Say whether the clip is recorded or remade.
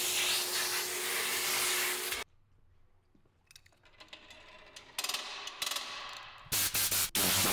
recorded